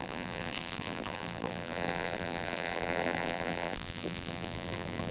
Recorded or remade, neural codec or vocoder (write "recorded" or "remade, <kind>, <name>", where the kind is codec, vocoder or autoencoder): remade, vocoder, BigVGAN v2